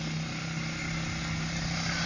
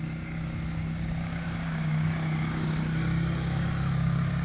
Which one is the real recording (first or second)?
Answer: first